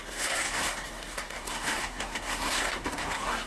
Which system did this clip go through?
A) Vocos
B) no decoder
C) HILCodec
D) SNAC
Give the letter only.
D